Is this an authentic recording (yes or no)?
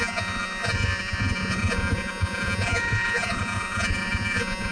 no